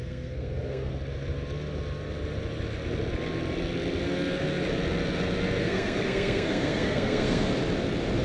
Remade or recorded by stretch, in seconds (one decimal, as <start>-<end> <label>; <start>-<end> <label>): 0.0-0.9 remade; 0.9-5.6 recorded; 5.6-7.5 remade; 7.5-8.2 recorded